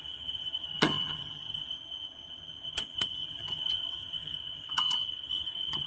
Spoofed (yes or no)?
yes